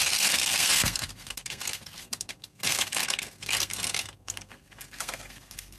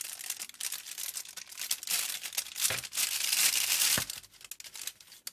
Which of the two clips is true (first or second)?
second